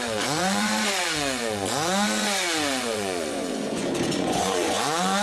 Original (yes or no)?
no